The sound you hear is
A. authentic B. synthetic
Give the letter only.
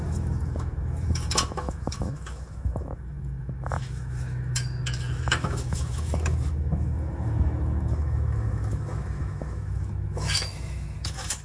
B